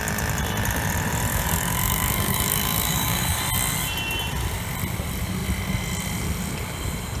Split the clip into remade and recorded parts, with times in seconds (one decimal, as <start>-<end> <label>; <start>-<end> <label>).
0.0-1.3 recorded; 1.3-3.4 remade; 3.4-7.2 recorded